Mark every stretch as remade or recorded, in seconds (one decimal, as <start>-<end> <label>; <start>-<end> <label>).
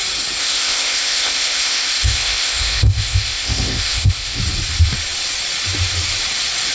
0.0-0.4 recorded; 0.4-4.4 remade; 4.4-6.7 recorded